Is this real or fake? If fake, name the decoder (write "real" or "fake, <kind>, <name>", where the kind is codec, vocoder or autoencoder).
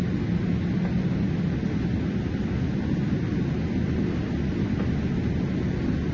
real